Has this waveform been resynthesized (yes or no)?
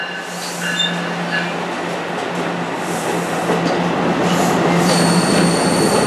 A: no